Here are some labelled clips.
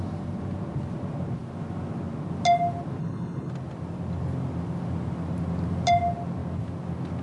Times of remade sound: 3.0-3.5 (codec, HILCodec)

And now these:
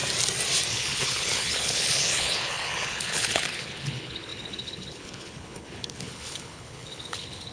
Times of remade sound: 0.7-7.5 (codec, HILCodec)